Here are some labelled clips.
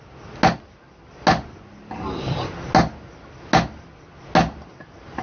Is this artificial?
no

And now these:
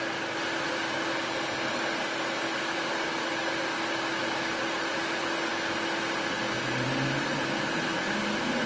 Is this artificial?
no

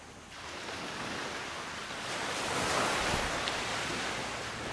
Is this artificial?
no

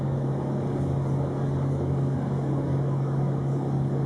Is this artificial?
yes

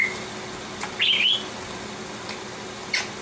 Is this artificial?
no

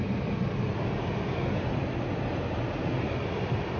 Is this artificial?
no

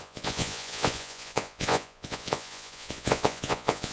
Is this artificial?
yes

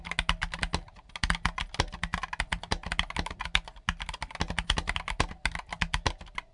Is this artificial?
no